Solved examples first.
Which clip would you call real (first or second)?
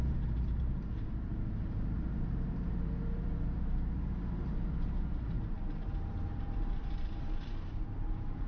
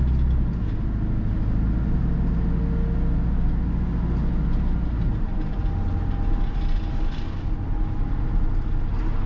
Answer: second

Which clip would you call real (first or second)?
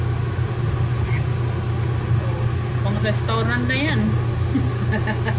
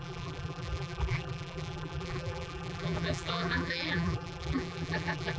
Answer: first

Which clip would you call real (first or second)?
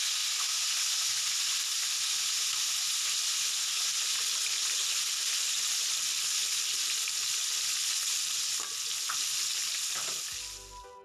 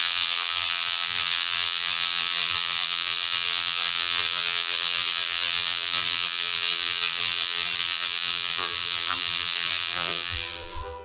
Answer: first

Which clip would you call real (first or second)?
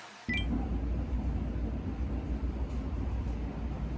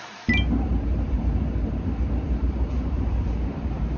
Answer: first